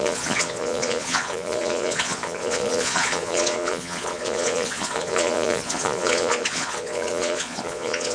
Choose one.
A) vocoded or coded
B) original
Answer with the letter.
A